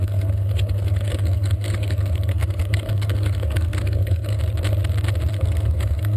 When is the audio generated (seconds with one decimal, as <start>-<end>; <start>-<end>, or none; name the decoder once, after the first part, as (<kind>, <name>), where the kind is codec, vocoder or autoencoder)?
0.0-4.4 (codec, SNAC); 5.3-6.2